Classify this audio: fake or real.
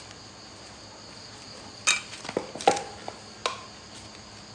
real